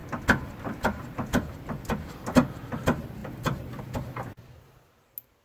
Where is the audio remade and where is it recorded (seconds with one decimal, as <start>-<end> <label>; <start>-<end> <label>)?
0.0-3.2 recorded; 3.2-3.8 remade; 3.8-5.4 recorded